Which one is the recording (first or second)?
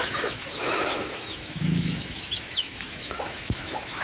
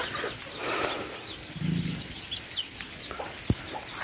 second